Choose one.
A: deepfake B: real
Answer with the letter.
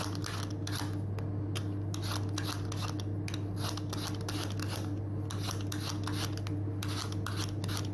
B